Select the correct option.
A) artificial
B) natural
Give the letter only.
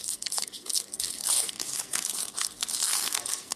A